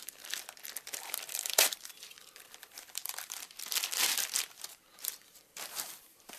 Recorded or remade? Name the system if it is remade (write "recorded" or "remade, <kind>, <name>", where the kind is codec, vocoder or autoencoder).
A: remade, vocoder, BigVGAN v2